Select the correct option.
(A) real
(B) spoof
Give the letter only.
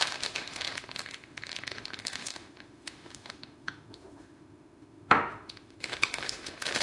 B